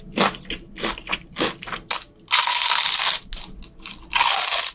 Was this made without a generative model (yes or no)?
yes